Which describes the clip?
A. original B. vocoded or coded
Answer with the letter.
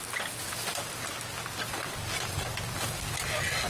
A